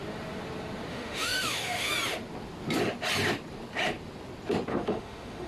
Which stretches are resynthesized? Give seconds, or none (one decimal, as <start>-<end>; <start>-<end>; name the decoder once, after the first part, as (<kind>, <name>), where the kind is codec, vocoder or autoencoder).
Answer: 0.9-1.9 (autoencoder, DAC-VAE); 4.7-5.5